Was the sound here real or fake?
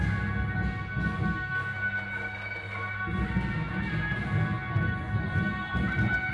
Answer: real